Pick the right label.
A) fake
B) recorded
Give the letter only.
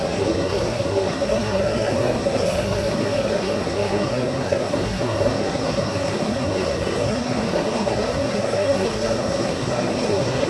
A